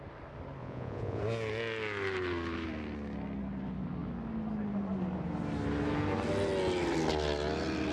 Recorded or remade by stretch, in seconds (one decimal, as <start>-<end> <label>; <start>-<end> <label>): 0.0-0.6 recorded; 0.6-1.2 remade; 1.2-7.9 recorded